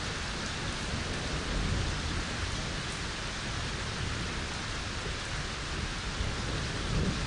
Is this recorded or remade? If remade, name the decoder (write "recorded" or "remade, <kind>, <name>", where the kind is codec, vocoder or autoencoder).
recorded